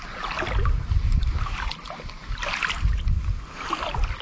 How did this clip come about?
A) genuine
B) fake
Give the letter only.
A